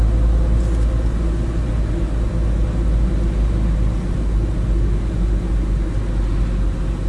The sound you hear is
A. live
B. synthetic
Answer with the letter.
A